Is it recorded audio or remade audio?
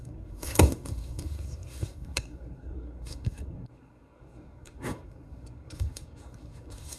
remade